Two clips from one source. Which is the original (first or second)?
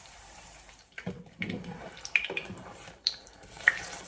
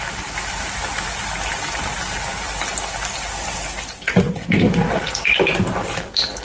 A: second